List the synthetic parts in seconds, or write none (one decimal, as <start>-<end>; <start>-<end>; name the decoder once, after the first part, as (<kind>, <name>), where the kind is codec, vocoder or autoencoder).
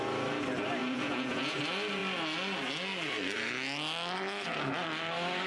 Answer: 0.8-1.6 (vocoder, Vocos)